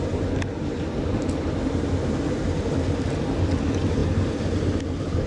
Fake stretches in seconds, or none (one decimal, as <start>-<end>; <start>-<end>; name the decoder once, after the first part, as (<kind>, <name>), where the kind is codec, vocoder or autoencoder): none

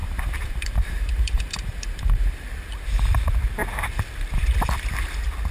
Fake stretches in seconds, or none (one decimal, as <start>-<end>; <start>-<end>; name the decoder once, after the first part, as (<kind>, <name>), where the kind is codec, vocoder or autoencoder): 0.0-2.3 (vocoder, BigVGAN v2)

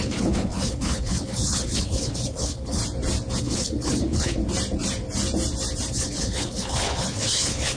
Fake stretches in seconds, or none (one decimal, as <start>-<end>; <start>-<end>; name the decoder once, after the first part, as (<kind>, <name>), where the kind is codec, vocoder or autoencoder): 0.0-2.8 (codec, HILCodec); 3.4-4.4; 5.9-7.8

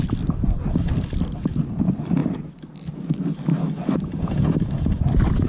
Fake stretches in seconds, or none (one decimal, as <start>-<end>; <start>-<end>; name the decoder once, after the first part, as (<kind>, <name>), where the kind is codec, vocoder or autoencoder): none